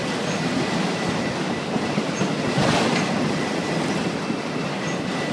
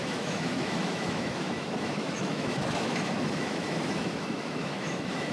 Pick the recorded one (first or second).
first